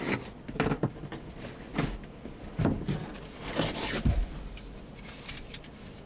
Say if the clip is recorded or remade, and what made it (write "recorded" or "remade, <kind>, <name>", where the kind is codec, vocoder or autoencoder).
recorded